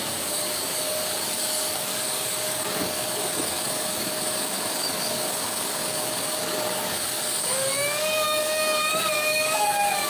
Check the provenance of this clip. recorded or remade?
remade